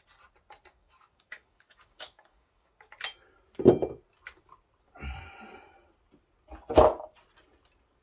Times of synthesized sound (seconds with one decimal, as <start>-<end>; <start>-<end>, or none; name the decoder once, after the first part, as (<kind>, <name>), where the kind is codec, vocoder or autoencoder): 0.7-2.8 (codec, DAC)